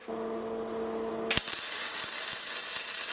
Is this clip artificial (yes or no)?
no